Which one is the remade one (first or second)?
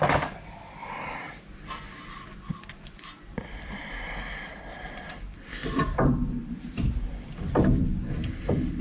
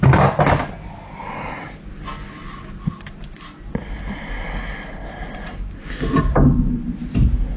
first